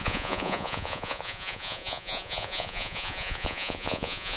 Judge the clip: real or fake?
fake